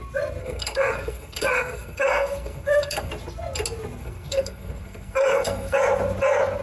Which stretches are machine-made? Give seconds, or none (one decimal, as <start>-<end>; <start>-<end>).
0.4-3.1; 4.0-5.8